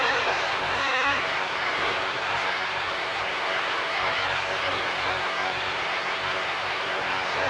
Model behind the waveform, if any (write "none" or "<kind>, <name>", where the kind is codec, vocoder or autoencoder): codec, SNAC